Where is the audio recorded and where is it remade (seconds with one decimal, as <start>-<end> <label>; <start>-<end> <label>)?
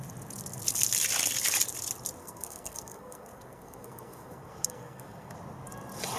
0.0-2.2 recorded; 2.2-5.3 remade; 5.3-6.2 recorded